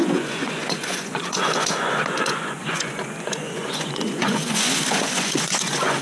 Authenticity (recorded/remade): remade